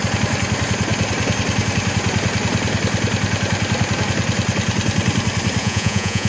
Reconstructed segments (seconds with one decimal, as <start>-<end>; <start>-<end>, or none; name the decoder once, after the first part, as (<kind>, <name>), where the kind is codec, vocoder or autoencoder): 5.6-6.3 (vocoder, Vocos)